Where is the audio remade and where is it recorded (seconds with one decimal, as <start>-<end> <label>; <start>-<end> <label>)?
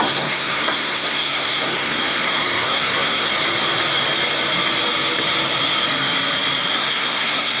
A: 0.0-3.3 remade; 3.3-6.7 recorded; 6.7-7.6 remade